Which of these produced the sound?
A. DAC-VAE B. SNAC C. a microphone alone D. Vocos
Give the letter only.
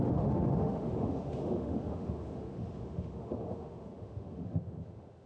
A